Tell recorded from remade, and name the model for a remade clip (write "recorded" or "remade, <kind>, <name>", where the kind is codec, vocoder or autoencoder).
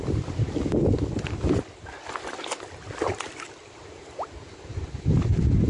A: recorded